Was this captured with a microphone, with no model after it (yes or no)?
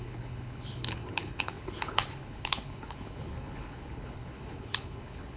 no